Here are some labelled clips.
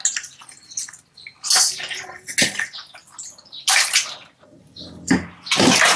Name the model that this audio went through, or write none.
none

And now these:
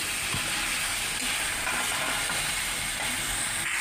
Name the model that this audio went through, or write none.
none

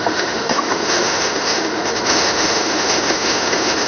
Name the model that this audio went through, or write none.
autoencoder, DAC-VAE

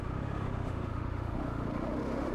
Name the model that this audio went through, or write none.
autoencoder, DAC-VAE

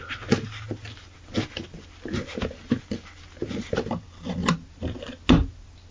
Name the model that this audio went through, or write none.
none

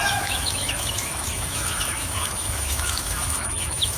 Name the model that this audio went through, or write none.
autoencoder, DAC-VAE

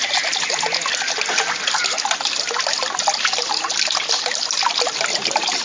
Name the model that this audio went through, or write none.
none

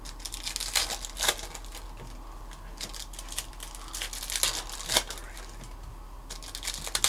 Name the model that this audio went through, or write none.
none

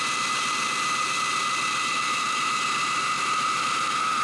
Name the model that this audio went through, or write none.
none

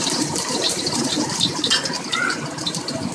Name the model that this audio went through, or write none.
none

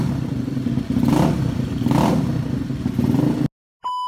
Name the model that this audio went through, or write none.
none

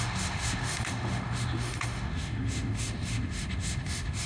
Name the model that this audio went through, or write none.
autoencoder, DAC-VAE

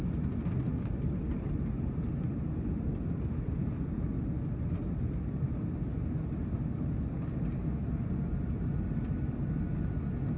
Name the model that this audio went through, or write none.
none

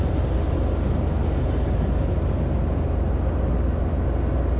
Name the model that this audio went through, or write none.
none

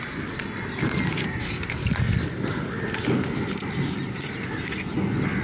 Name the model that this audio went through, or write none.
none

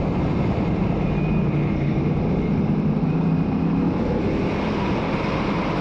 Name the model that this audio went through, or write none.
none